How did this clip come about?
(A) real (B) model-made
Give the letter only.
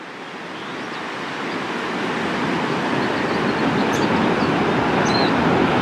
A